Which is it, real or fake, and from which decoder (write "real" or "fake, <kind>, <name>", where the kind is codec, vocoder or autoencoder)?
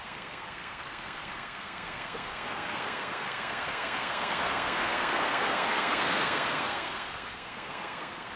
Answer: fake, codec, SNAC